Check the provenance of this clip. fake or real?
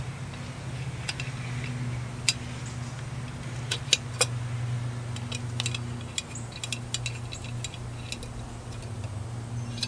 real